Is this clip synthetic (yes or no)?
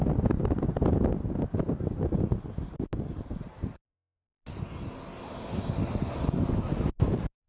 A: no